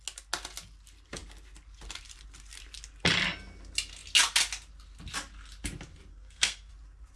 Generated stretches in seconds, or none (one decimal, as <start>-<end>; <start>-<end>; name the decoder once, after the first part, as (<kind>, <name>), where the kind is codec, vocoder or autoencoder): 6.1-6.7 (codec, SNAC)